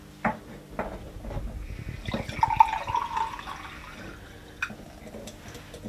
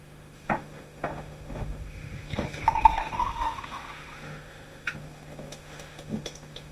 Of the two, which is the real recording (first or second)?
first